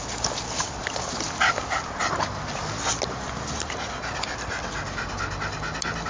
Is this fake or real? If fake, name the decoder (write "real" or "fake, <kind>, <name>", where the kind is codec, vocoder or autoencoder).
real